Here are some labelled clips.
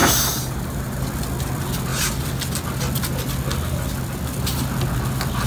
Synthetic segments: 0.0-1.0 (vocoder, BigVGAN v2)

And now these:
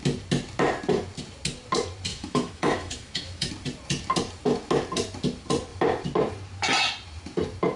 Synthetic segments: 2.1-3.5 (autoencoder, DAC-VAE)

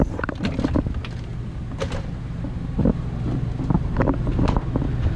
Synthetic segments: none